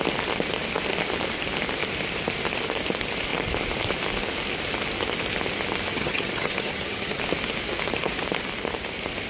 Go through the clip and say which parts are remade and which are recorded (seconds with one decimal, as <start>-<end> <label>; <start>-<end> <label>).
0.0-5.9 recorded; 5.9-7.2 remade; 7.2-9.3 recorded